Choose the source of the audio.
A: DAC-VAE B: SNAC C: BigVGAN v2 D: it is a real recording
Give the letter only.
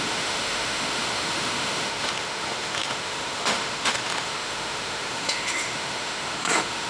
A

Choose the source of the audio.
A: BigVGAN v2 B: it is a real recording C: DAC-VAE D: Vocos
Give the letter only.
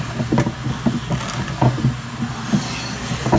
B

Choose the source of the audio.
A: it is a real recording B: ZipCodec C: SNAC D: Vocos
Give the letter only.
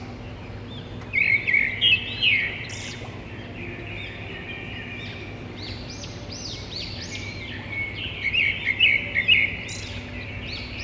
A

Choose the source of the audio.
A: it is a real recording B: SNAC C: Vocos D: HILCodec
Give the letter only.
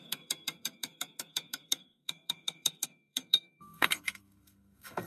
B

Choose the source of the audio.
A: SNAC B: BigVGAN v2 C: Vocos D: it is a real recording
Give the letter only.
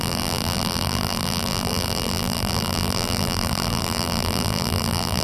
B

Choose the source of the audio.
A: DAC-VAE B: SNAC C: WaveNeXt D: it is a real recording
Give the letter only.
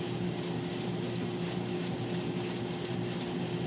D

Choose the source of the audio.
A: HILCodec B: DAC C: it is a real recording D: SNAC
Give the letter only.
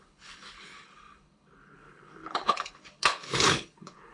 A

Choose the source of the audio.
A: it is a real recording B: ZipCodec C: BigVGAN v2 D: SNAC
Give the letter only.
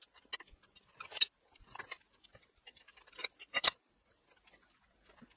A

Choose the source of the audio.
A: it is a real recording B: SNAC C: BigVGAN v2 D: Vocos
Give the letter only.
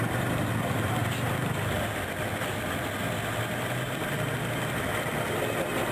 C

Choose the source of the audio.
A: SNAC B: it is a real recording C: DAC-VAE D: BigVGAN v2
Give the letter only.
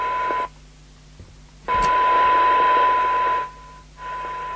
B